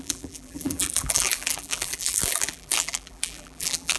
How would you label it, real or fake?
fake